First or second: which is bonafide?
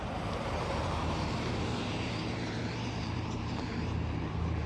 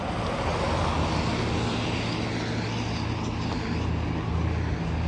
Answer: second